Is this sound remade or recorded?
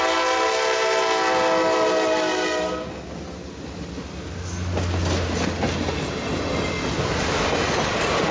recorded